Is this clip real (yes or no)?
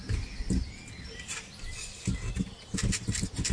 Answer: yes